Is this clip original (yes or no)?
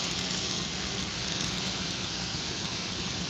no